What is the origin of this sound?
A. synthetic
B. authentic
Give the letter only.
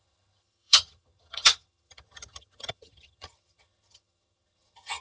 A